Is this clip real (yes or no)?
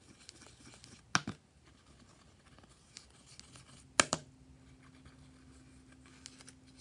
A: yes